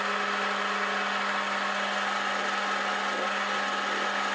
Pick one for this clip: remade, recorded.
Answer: recorded